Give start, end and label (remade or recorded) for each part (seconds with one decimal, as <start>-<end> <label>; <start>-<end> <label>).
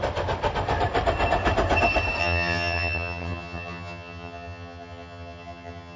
0.0-2.2 recorded; 2.2-6.0 remade